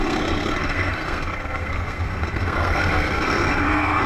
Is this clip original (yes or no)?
no